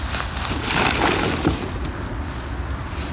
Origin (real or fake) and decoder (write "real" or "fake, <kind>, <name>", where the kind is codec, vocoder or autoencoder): real